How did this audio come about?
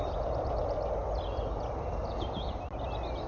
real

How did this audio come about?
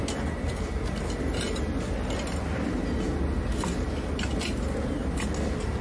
real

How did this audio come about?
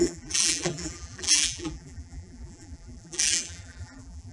fake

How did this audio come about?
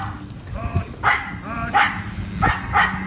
real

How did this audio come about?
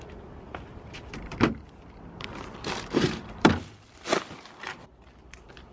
fake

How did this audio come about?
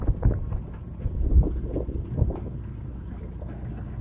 real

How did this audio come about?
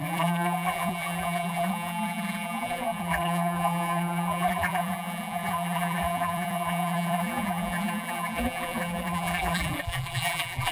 fake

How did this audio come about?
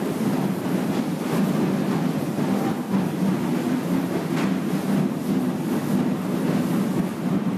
real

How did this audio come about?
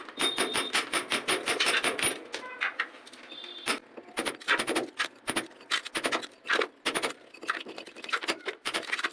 real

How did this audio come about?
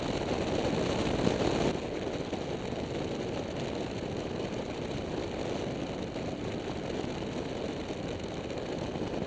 real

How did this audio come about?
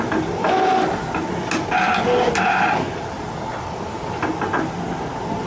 real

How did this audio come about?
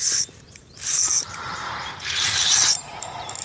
fake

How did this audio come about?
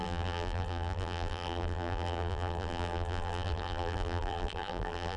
fake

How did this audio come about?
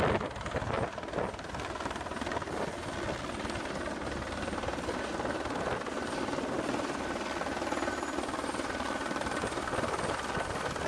real